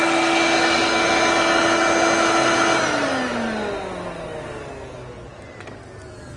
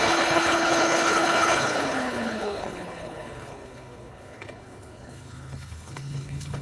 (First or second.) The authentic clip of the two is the first